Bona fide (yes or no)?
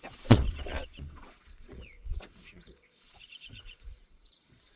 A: no